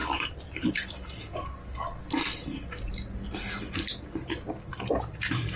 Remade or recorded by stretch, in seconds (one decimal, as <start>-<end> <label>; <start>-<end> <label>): 0.0-1.3 remade; 1.3-4.7 recorded; 4.7-5.6 remade

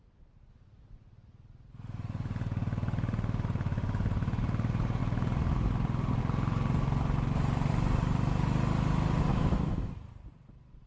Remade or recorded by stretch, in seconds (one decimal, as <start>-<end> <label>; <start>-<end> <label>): 0.0-9.3 recorded; 9.3-10.1 remade; 10.1-10.9 recorded

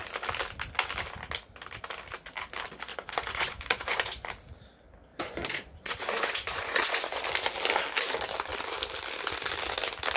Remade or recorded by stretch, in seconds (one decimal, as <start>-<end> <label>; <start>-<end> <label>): 0.0-2.9 recorded; 2.9-4.3 remade; 4.3-5.1 recorded; 5.1-7.2 remade; 7.2-10.2 recorded

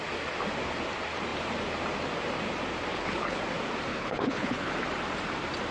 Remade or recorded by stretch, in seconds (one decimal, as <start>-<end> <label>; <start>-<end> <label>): 0.0-2.9 recorded; 2.9-3.4 remade; 3.4-3.9 recorded; 3.9-4.7 remade; 4.7-5.7 recorded

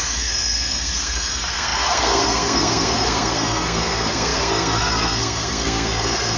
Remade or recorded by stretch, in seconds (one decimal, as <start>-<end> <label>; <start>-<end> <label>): 0.0-6.4 remade